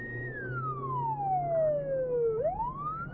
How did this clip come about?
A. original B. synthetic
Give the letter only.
A